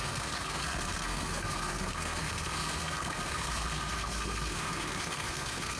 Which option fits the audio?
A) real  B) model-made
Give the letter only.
B